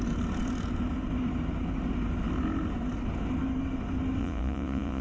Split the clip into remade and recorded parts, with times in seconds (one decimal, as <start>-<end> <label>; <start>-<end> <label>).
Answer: 0.0-4.2 recorded; 4.2-5.0 remade